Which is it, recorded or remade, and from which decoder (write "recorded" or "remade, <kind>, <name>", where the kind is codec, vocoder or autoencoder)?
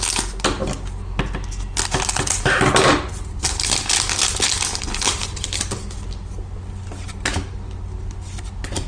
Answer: recorded